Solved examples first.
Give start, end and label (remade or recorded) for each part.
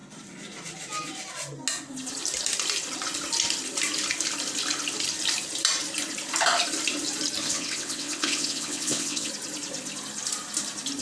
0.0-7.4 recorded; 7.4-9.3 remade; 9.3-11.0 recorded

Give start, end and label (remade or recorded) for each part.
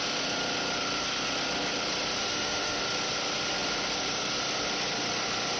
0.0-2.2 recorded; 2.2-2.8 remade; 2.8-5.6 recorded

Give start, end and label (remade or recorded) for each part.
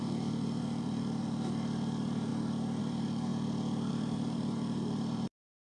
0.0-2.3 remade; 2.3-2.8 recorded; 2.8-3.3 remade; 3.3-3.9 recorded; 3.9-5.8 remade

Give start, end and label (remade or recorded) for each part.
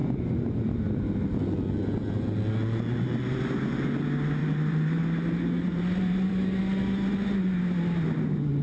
0.0-4.4 recorded; 4.4-5.0 remade; 5.0-5.7 recorded; 5.7-6.3 remade; 6.3-8.6 recorded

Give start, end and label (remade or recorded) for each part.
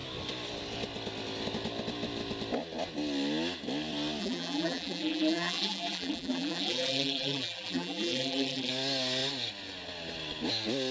0.0-4.2 recorded; 4.2-8.7 remade; 8.7-10.9 recorded